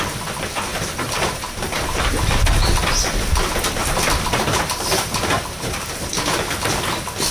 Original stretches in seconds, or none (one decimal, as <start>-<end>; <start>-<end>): 0.0-0.7; 2.6-3.8; 6.0-7.3